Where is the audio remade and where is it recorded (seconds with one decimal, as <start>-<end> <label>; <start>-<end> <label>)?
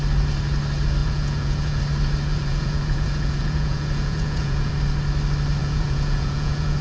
0.0-1.0 recorded; 1.0-1.8 remade; 1.8-2.3 recorded; 2.3-4.7 remade; 4.7-5.6 recorded; 5.6-6.8 remade